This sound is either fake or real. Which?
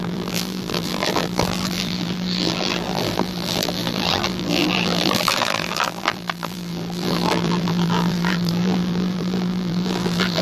fake